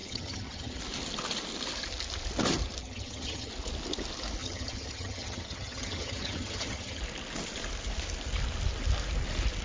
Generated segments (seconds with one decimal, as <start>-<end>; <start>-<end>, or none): 0.0-0.8; 2.8-3.5; 4.4-7.0